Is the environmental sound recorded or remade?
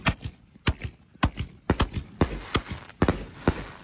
recorded